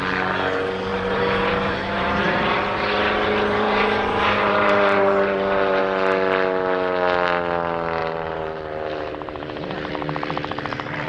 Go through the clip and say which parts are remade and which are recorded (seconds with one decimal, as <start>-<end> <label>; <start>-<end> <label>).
0.0-0.9 recorded; 0.9-5.8 remade; 5.8-8.0 recorded; 8.0-9.9 remade; 9.9-11.1 recorded